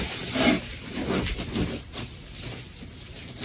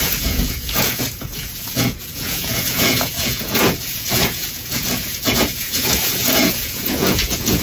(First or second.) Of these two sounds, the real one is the first